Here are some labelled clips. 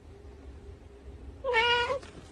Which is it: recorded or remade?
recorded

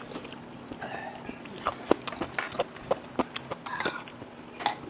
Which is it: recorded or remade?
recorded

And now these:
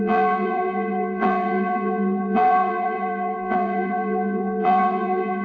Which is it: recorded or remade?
remade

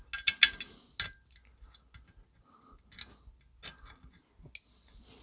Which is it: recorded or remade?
recorded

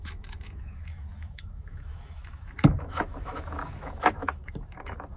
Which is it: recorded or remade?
remade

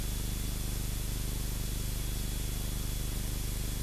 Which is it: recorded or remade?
recorded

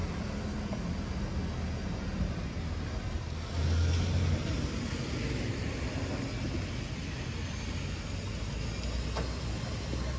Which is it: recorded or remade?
recorded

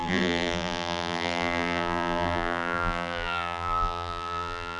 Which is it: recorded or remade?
remade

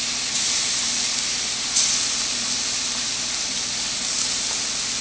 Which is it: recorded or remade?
recorded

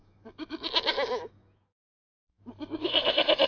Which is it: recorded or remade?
remade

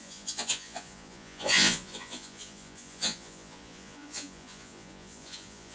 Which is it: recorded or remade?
remade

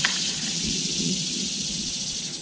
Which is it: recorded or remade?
remade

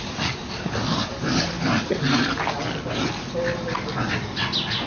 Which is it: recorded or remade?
recorded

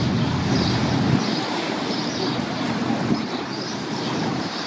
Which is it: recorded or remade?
remade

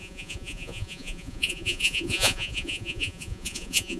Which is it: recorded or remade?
remade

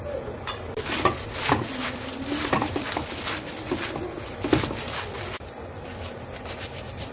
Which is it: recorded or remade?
recorded